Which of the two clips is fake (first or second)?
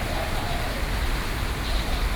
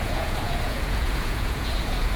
second